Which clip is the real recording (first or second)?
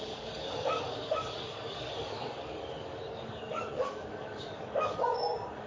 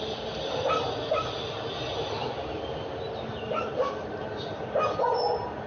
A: second